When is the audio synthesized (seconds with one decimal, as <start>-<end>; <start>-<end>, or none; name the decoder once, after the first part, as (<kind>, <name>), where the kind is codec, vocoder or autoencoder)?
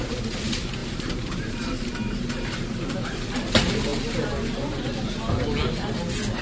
0.8-3.5 (vocoder, BigVGAN v2)